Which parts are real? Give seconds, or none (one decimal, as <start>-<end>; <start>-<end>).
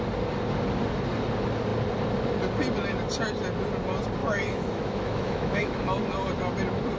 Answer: 0.0-4.2; 6.0-7.0